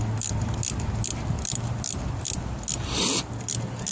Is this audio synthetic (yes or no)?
no